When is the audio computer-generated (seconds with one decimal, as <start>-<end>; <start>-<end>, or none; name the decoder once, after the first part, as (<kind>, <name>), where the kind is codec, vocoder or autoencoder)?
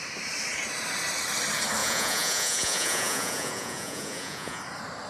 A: 1.8-4.6 (vocoder, Vocos)